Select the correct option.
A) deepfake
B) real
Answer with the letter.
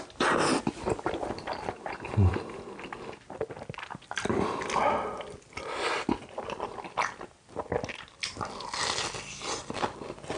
B